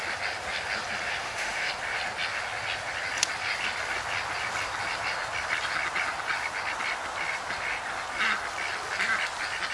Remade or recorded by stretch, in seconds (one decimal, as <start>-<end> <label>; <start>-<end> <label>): 0.0-1.2 recorded; 1.2-1.7 remade; 1.7-9.7 recorded